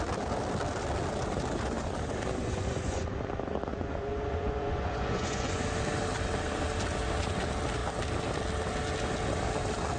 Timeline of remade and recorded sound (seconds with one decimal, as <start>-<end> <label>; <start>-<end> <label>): 0.0-2.4 recorded; 2.4-3.3 remade; 3.3-3.7 recorded; 3.7-5.6 remade; 5.6-10.0 recorded

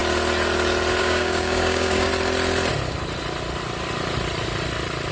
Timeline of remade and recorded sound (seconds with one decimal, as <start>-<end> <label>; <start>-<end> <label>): 0.0-1.0 recorded; 1.0-2.1 remade; 2.1-5.1 recorded

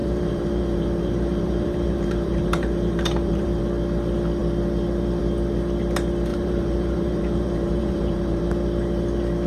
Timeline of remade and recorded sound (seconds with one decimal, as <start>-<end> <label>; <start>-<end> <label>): 0.0-3.6 remade; 3.6-6.3 recorded; 6.3-8.4 remade; 8.4-9.5 recorded

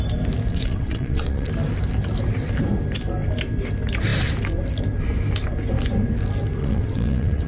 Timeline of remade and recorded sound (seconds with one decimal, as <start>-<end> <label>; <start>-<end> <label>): 0.0-0.5 recorded; 0.5-1.5 remade; 1.5-6.6 recorded; 6.6-7.5 remade

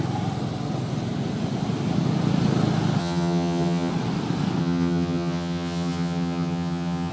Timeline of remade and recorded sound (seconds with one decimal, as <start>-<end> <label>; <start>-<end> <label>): 0.0-3.0 recorded; 3.0-3.9 remade; 3.9-4.6 recorded; 4.6-7.1 remade

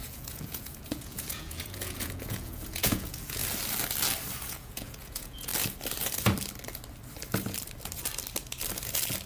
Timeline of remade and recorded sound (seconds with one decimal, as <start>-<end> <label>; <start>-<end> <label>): 0.0-3.4 remade; 3.4-4.4 recorded; 4.4-5.5 remade; 5.5-9.3 recorded